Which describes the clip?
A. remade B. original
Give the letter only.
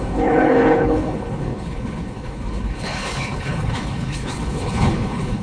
A